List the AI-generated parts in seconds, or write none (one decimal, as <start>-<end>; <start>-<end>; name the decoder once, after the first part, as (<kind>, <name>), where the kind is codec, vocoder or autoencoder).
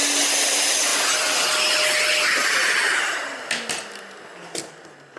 none